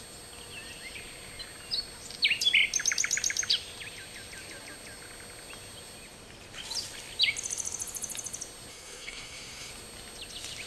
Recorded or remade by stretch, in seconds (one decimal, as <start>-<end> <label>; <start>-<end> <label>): 0.0-8.7 recorded; 8.7-9.7 remade; 9.7-10.7 recorded